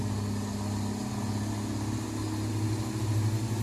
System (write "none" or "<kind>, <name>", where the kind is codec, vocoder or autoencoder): none